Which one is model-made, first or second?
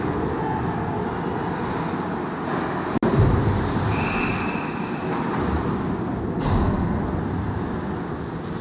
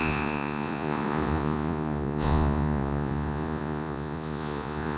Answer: second